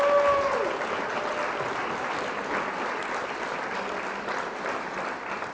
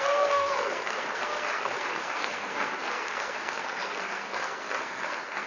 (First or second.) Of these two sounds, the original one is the first